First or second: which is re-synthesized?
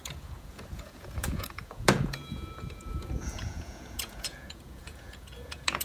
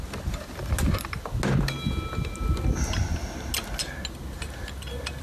first